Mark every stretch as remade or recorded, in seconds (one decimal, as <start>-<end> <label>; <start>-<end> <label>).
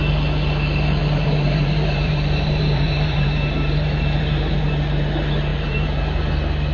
0.0-1.0 recorded; 1.0-4.6 remade; 4.6-5.5 recorded; 5.5-6.3 remade; 6.3-6.7 recorded